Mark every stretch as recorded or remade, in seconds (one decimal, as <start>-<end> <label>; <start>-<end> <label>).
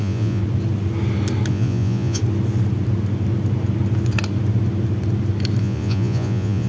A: 0.0-0.4 remade; 0.4-1.5 recorded; 1.5-2.2 remade; 2.2-5.6 recorded; 5.6-6.7 remade